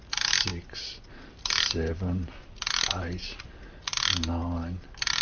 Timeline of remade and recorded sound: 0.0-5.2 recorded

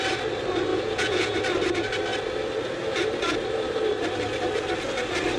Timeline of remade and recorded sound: 0.0-0.7 recorded; 0.7-1.4 remade; 1.4-5.4 recorded

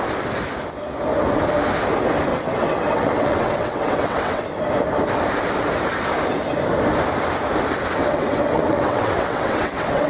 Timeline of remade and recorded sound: 0.0-2.3 recorded; 2.3-4.4 remade; 4.4-8.0 recorded; 8.0-10.1 remade

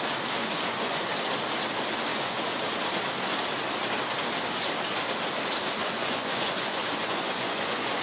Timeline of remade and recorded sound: 0.0-0.4 recorded; 0.4-1.1 remade; 1.1-2.1 recorded; 2.1-2.6 remade; 2.6-5.8 recorded; 5.8-8.0 remade

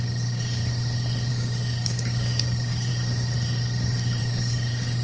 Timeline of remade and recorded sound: 0.0-0.6 remade; 0.6-1.3 recorded; 1.3-2.9 remade; 2.9-4.2 recorded; 4.2-5.0 remade

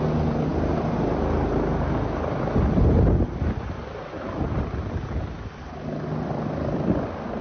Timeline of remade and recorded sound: 0.0-7.4 recorded